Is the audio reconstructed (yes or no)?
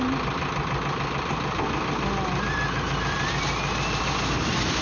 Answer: no